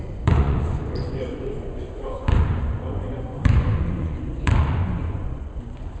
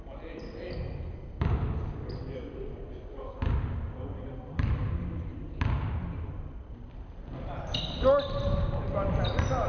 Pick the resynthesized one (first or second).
first